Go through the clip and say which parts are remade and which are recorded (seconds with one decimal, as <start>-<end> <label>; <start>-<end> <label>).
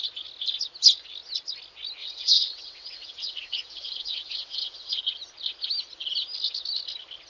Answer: 0.0-2.0 recorded; 2.0-5.0 remade; 5.0-7.3 recorded